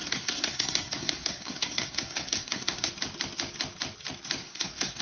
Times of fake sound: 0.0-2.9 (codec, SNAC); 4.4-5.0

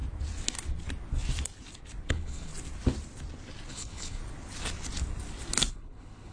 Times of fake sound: 2.1-2.5 (codec, HILCodec); 3.7-4.2; 5.7-6.3

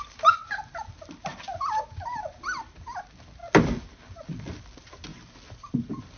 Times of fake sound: 5.1-6.2 (vocoder, BigVGAN v2)

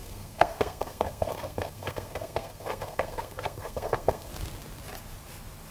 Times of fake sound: 0.0-4.3 (codec, SNAC)